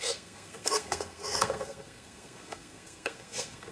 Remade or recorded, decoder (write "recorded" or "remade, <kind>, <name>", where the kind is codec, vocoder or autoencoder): remade, codec, SNAC